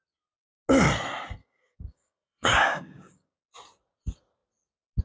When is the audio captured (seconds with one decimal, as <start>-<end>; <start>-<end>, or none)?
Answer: 0.0-1.4; 3.4-5.0